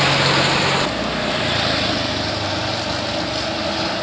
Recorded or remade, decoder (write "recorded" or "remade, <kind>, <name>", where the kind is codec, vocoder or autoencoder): recorded